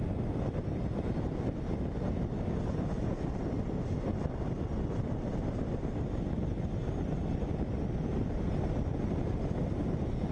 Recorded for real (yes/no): yes